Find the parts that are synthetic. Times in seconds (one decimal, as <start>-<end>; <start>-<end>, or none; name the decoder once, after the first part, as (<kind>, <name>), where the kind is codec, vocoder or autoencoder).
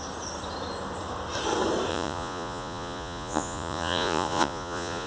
1.9-5.1 (vocoder, Vocos)